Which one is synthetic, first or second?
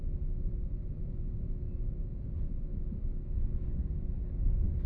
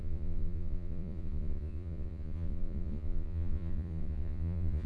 second